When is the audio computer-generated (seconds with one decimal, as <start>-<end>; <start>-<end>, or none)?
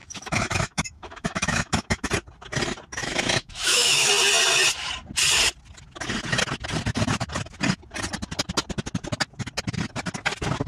0.0-2.1; 3.0-4.1